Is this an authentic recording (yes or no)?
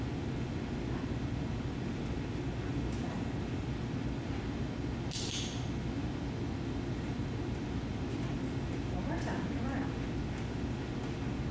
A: yes